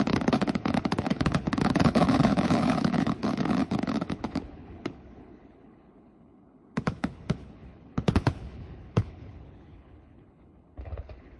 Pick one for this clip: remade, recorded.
remade